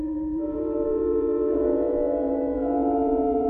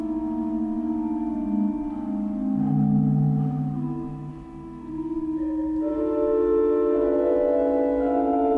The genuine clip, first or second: second